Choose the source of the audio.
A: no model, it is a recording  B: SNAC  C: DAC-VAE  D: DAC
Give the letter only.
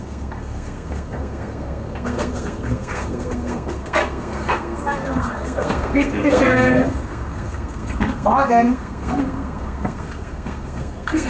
B